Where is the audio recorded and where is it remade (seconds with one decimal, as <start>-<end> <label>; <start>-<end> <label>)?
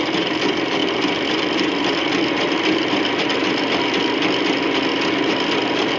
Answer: 0.0-6.0 recorded